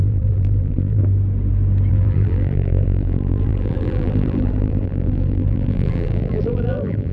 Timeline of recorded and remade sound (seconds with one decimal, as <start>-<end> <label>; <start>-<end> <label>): 0.0-1.0 remade; 1.0-1.9 recorded; 1.9-7.1 remade